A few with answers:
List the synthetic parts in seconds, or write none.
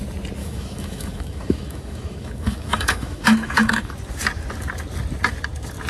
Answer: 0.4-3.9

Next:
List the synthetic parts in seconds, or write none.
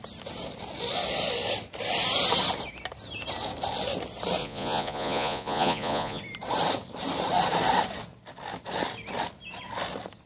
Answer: 4.4-6.2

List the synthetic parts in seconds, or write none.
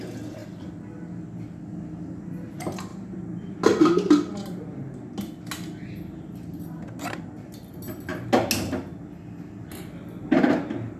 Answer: none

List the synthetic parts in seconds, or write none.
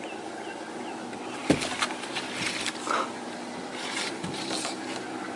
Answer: none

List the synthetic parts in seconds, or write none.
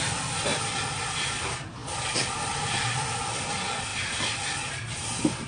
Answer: 0.5-1.3; 1.8-3.5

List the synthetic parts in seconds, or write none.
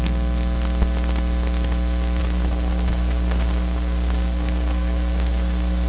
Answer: 2.2-5.9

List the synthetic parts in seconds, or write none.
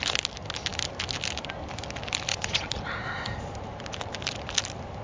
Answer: 2.3-2.8